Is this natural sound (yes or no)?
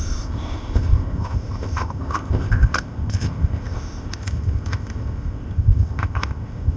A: no